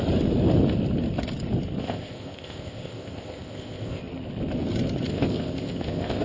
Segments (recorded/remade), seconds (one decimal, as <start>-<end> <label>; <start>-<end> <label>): 0.0-1.8 recorded; 1.8-4.0 remade; 4.0-5.1 recorded; 5.1-6.2 remade